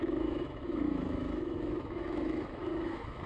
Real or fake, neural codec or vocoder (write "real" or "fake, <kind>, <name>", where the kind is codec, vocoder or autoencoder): fake, autoencoder, DAC-VAE